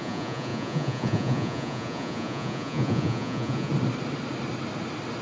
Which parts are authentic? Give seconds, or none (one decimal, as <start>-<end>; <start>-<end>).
3.7-5.2